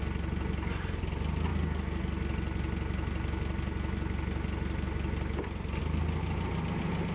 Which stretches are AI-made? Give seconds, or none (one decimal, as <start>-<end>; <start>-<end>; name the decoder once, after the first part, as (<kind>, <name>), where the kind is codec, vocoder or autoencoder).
none